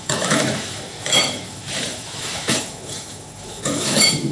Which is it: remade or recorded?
remade